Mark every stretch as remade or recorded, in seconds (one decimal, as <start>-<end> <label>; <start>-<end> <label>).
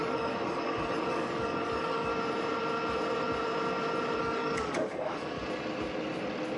0.0-2.1 remade; 2.1-4.2 recorded; 4.2-5.4 remade; 5.4-6.6 recorded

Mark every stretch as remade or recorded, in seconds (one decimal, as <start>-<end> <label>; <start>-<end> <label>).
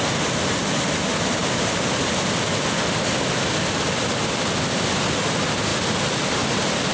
0.0-6.9 recorded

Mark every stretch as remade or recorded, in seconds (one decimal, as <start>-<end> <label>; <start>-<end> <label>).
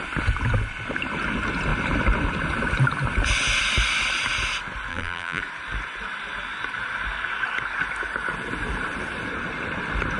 0.0-4.9 recorded; 4.9-5.4 remade; 5.4-10.2 recorded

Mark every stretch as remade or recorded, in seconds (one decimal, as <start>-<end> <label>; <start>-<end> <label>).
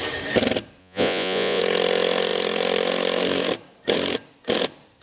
0.0-0.8 recorded; 0.8-1.6 remade; 1.6-5.0 recorded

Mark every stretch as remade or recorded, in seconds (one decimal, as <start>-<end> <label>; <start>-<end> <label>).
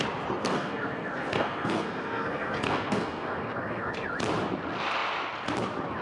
0.0-0.4 recorded; 0.4-3.9 remade; 3.9-6.0 recorded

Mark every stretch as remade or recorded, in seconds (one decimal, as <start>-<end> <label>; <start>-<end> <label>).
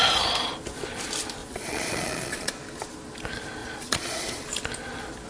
0.0-1.4 recorded; 1.4-2.5 remade; 2.5-3.6 recorded; 3.6-4.4 remade; 4.4-5.3 recorded